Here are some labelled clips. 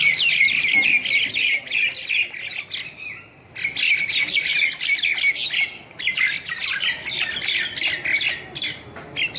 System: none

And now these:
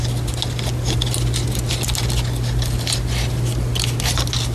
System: none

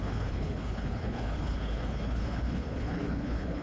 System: codec, HILCodec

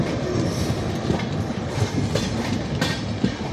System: none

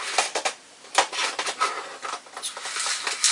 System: none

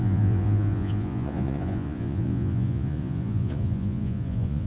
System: vocoder, Vocos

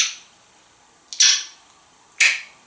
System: none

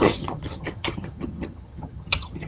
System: vocoder, HiFi-GAN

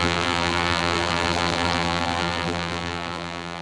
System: vocoder, BigVGAN v2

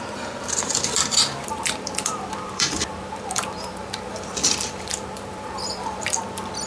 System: vocoder, BigVGAN v2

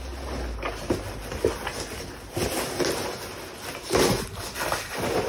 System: none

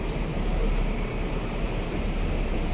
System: vocoder, BigVGAN v2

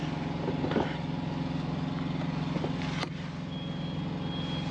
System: none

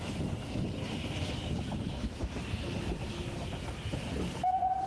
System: none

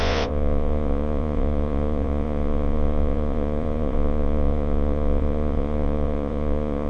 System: vocoder, Vocos